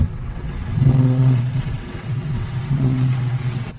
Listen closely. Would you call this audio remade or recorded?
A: remade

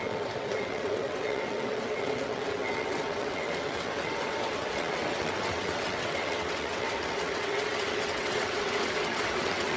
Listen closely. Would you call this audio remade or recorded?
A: remade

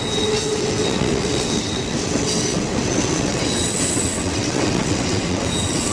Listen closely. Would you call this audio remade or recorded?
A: remade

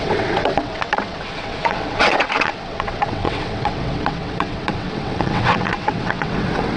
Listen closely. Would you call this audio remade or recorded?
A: remade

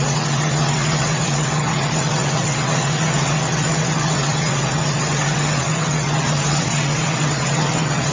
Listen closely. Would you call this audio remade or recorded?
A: remade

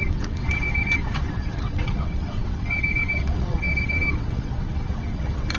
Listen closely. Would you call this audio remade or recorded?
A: remade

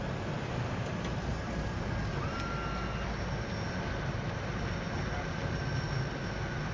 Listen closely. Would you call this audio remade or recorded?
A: recorded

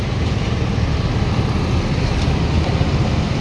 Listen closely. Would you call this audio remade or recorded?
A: recorded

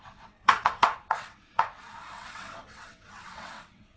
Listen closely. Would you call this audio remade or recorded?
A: remade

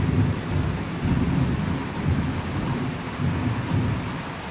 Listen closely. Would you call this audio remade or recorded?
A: recorded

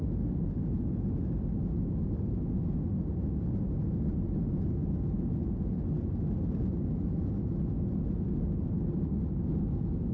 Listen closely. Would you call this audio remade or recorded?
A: recorded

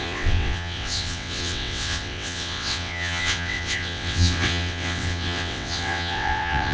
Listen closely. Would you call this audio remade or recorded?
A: remade